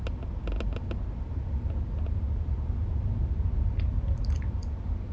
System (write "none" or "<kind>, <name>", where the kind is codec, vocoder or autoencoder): none